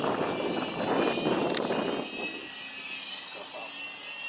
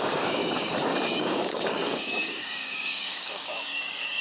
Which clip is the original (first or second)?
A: first